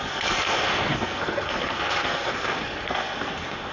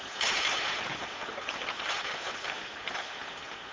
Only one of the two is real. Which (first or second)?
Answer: second